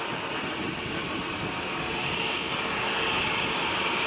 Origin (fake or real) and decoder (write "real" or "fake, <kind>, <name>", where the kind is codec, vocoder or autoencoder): real